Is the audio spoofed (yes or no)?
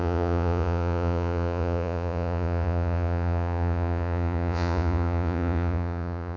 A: yes